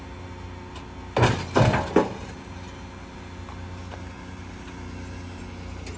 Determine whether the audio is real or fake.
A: real